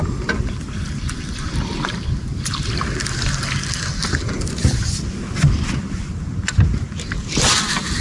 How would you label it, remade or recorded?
recorded